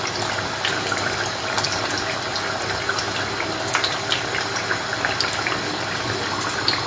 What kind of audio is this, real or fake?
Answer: real